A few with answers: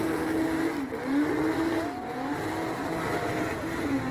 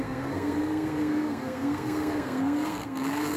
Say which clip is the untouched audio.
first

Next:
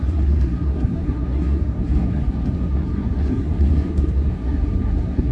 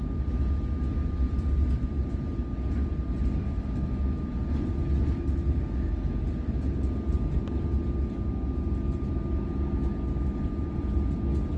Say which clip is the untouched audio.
second